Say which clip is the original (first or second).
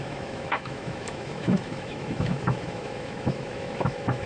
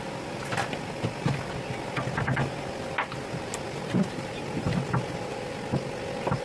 second